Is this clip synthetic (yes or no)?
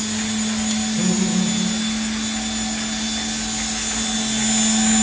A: no